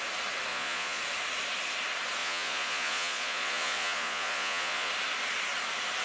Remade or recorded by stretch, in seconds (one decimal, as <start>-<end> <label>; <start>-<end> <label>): 0.0-0.5 recorded; 0.5-1.0 remade; 1.0-2.2 recorded; 2.2-4.9 remade; 4.9-6.0 recorded